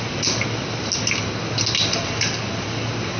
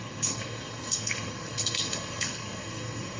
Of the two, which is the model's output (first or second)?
second